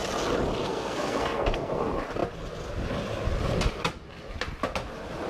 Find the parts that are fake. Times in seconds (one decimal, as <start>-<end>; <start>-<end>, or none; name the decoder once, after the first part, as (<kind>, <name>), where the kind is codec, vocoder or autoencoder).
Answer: 0.6-1.8 (codec, SNAC)